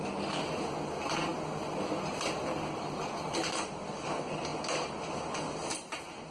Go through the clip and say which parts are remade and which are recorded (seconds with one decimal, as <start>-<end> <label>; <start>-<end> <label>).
0.0-6.3 recorded